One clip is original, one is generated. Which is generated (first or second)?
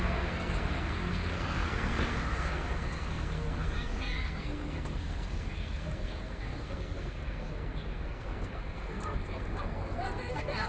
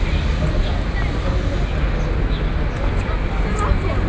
first